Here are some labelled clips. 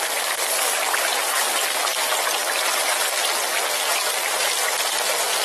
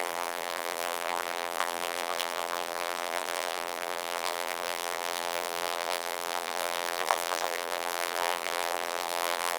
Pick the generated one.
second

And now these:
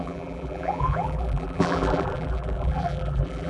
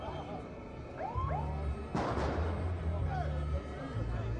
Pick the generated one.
first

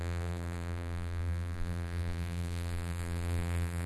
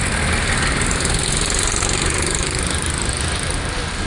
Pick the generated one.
first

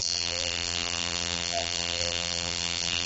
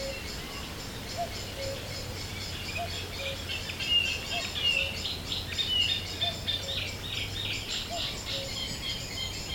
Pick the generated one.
first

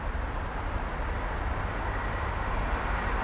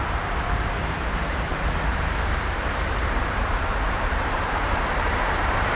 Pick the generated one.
second